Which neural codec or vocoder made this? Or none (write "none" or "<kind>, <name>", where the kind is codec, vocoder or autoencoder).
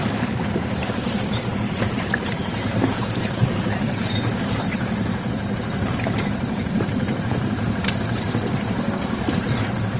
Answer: vocoder, BigVGAN v2